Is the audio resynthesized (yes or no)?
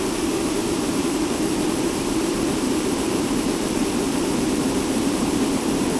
yes